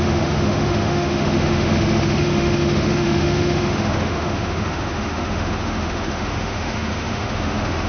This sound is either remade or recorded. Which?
remade